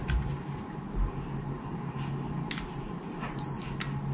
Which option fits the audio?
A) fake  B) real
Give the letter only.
B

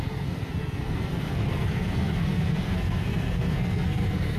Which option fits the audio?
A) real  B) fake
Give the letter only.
B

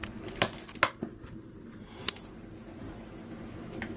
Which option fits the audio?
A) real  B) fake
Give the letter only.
A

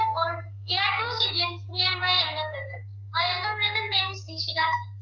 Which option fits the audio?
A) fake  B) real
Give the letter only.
A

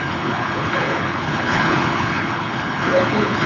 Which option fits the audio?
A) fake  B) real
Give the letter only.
A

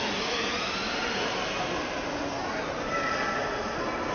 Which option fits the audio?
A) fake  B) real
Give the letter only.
B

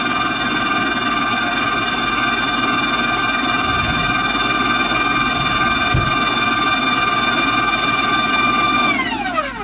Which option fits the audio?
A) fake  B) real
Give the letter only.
B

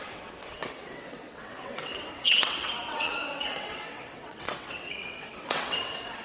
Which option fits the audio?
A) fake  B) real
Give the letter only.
A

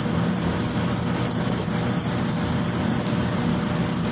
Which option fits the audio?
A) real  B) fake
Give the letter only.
A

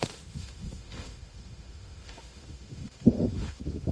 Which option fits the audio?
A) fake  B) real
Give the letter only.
A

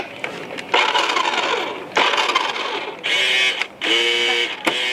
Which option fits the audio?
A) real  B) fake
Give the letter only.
A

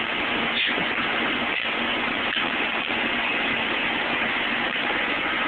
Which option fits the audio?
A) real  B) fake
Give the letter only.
B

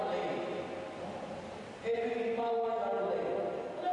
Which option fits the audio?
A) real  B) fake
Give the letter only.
A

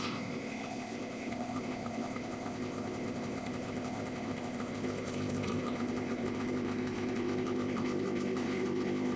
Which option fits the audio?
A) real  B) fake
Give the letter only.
B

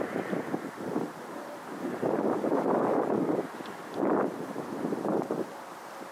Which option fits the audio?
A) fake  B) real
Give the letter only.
A